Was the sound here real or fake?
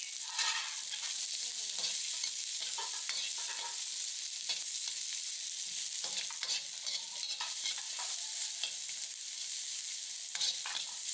real